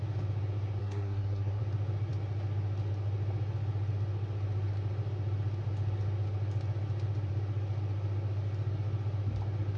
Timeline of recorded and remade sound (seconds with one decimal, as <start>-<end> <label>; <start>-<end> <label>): 0.0-0.8 recorded; 0.8-1.6 remade; 1.6-9.8 recorded